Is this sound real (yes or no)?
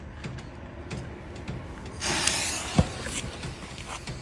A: yes